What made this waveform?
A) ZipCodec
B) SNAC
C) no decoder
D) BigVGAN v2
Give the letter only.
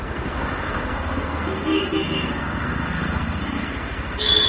B